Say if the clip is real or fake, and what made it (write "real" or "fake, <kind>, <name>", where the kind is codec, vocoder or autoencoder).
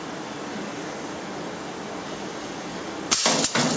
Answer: real